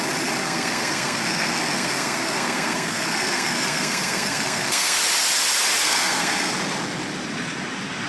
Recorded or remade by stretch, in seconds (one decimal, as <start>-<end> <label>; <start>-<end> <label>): 0.0-0.4 recorded; 0.4-5.0 remade; 5.0-5.8 recorded; 5.8-6.5 remade; 6.5-8.1 recorded